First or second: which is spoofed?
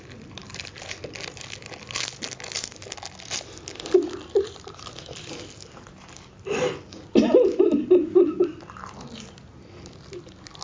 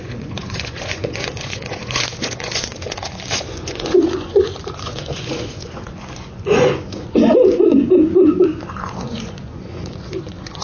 second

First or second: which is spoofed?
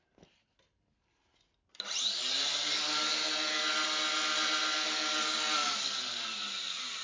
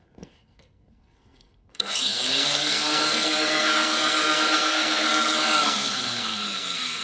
second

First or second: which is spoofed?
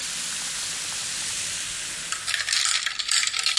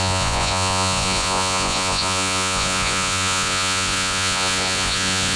second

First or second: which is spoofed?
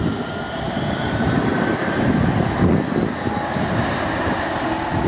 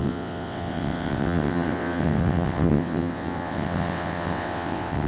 second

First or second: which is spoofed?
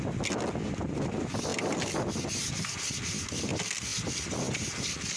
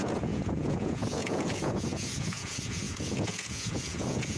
second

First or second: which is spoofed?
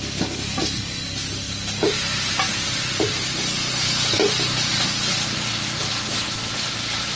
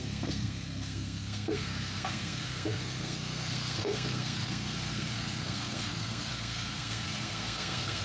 second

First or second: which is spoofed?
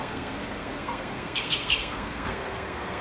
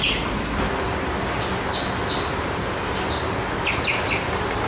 first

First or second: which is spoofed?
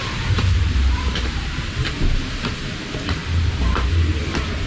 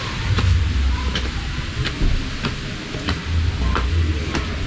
first